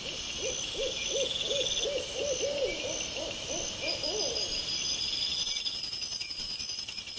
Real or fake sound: real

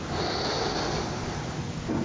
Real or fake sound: real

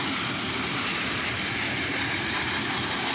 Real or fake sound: fake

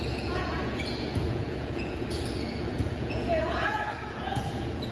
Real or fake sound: fake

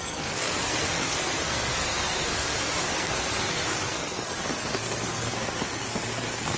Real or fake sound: fake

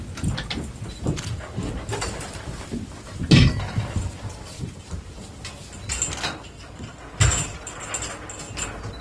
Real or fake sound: real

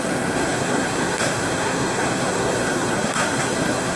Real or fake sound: fake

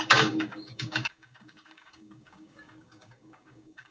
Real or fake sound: fake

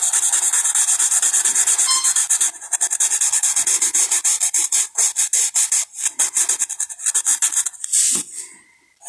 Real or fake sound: real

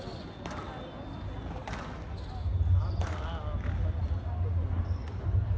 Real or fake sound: real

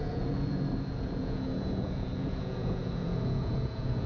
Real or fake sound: fake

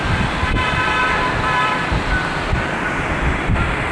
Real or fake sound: fake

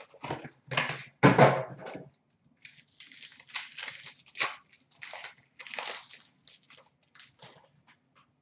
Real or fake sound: real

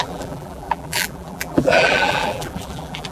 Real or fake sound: fake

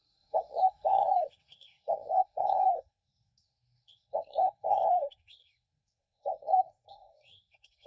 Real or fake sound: fake